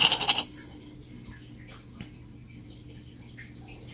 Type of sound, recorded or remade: recorded